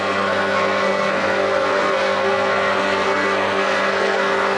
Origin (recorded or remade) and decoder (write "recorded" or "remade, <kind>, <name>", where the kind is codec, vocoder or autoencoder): remade, codec, SNAC